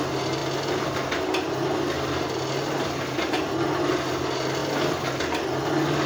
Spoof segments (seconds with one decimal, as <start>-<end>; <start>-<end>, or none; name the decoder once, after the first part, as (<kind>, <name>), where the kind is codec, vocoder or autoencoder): none